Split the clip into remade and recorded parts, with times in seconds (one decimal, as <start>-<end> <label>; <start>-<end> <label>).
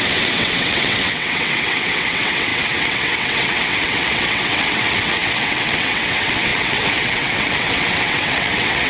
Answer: 0.0-8.9 remade